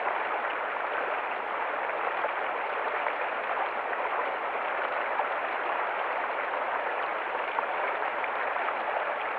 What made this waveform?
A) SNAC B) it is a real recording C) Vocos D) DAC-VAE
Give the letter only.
B